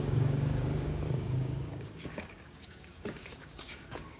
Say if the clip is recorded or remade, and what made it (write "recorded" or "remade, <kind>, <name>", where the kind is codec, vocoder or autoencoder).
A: remade, codec, DAC